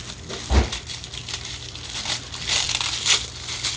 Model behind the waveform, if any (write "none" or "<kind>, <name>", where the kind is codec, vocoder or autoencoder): none